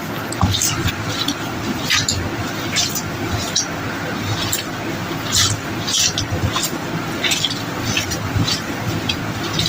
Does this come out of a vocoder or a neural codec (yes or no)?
no